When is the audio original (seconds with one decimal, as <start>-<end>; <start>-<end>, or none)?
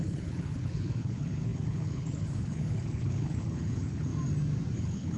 4.1-4.8